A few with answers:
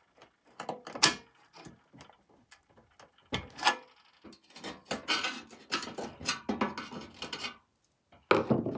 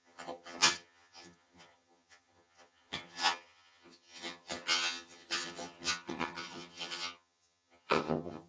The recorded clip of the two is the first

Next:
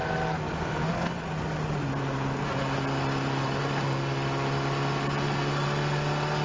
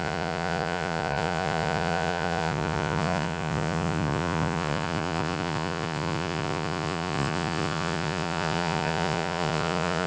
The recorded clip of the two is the first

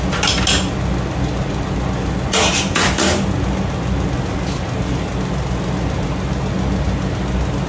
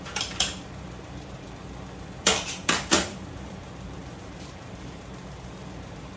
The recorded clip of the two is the first